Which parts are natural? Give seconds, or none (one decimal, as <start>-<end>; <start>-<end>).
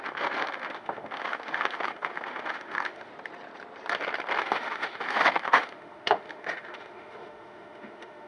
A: 3.1-4.4